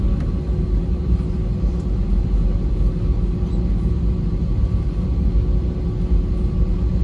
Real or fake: real